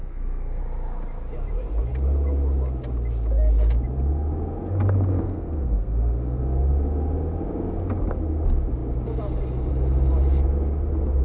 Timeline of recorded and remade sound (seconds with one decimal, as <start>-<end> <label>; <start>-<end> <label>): 0.0-0.6 remade; 0.6-5.1 recorded; 5.1-6.4 remade; 6.4-11.2 recorded